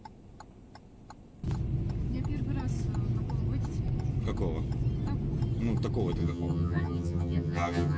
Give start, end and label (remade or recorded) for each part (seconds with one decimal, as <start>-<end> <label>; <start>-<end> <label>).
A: 0.0-6.2 recorded; 6.2-8.0 remade